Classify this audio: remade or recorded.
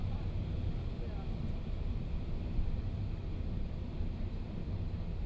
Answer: recorded